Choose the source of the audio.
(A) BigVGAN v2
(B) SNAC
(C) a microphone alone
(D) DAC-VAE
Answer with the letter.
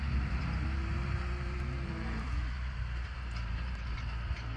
A